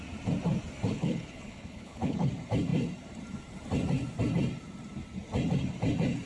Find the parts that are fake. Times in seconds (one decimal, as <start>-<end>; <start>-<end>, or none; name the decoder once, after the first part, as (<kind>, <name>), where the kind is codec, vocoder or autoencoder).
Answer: 0.9-2.3 (codec, HILCodec)